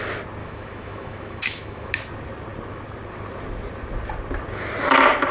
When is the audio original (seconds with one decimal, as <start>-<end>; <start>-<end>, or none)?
0.0-0.4; 1.9-5.3